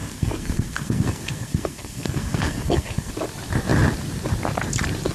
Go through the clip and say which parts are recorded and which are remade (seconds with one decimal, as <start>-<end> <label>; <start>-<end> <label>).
0.0-3.1 remade; 3.1-5.1 recorded